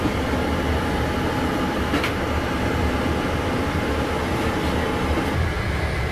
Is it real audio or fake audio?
real